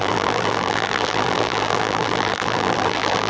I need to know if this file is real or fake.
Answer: fake